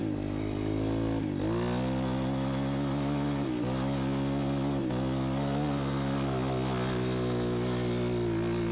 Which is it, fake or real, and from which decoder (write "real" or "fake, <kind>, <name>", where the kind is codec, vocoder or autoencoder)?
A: real